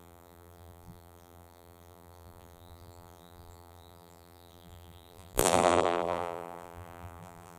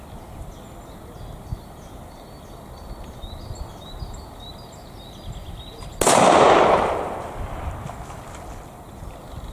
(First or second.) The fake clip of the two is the first